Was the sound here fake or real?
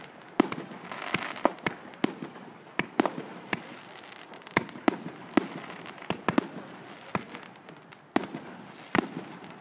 real